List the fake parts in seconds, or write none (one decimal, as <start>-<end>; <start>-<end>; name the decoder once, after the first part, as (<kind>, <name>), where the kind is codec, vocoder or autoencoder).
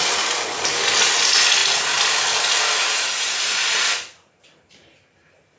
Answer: none